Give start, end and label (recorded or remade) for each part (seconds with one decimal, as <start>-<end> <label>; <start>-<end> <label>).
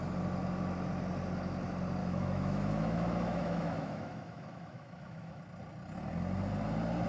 0.0-2.0 recorded; 2.0-5.4 remade; 5.4-7.1 recorded